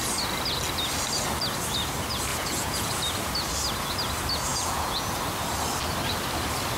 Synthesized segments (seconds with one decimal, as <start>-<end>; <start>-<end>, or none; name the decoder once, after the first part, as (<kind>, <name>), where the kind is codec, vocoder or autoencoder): 2.3-2.9 (vocoder, Vocos); 4.5-5.2